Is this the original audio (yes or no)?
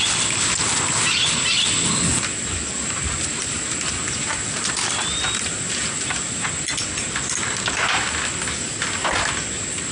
yes